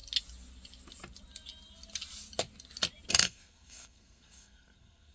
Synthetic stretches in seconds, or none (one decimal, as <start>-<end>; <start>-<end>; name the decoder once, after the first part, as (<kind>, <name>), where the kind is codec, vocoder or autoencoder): 3.1-5.1 (codec, SNAC)